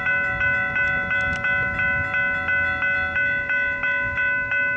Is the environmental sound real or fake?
real